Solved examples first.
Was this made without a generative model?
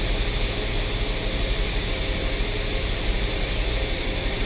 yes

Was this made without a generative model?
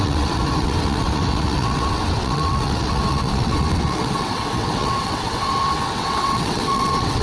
no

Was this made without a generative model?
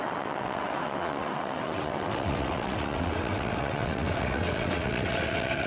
no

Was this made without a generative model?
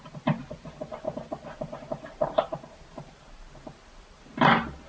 yes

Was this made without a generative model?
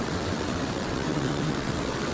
no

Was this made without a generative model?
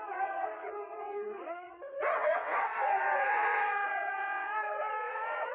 no